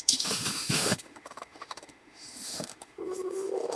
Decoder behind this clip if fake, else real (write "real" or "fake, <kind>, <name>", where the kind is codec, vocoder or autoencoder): fake, autoencoder, DAC-VAE